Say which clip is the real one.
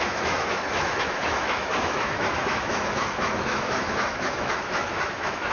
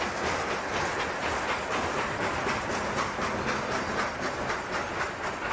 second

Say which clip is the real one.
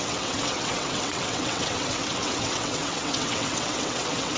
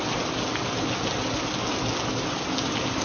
second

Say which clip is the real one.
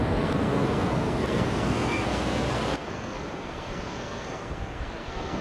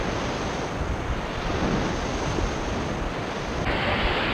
second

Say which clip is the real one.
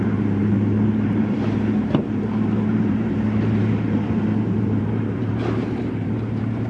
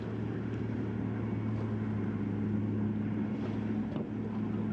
second